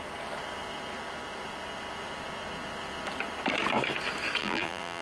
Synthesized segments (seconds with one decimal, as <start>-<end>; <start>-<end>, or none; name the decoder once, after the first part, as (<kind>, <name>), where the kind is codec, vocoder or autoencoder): 4.4-5.0 (vocoder, BigVGAN v2)